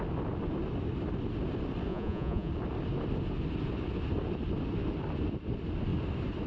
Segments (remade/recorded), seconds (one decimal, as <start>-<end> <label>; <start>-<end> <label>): 0.0-1.9 recorded; 1.9-2.5 remade; 2.5-6.5 recorded